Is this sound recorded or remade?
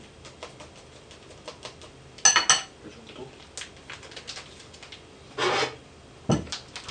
recorded